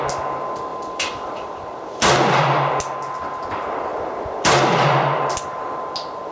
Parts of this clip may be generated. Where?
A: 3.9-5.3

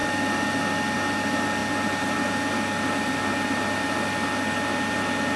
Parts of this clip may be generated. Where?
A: none

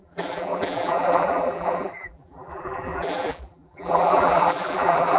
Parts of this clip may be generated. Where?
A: 0.0-5.2